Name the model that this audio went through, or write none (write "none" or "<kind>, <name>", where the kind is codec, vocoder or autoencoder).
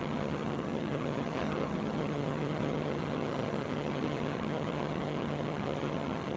vocoder, HiFi-GAN